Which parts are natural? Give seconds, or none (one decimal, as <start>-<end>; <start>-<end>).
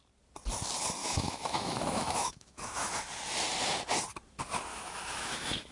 0.0-1.0; 2.9-4.7